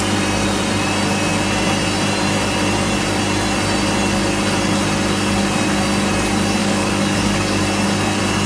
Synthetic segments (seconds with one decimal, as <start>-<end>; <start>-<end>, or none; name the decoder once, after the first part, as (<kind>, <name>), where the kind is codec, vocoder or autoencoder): 6.6-7.6 (codec, DAC)